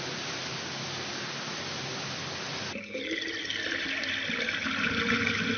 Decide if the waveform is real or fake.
real